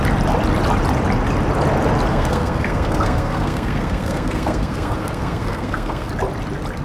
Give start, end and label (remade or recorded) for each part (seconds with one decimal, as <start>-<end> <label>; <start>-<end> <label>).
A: 0.0-2.1 recorded; 2.1-6.1 remade; 6.1-6.8 recorded